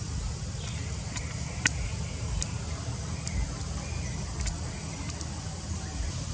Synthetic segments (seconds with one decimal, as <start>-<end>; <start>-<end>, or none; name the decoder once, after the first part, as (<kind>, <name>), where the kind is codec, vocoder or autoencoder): 0.0-1.9 (vocoder, BigVGAN v2); 5.7-6.3